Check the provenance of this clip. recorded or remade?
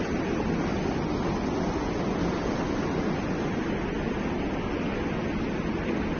recorded